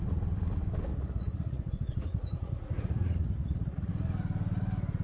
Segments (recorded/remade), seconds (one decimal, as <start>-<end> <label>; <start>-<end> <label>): 0.0-0.9 recorded; 0.9-3.9 remade; 3.9-5.0 recorded